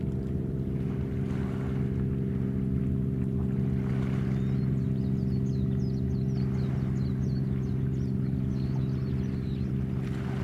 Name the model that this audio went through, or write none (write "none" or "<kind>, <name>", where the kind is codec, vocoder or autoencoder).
none